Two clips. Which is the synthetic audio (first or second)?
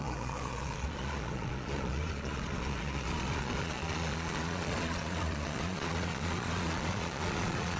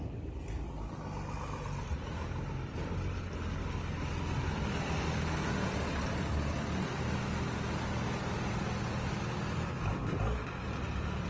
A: first